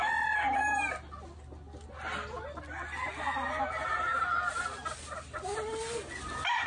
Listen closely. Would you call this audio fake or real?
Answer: real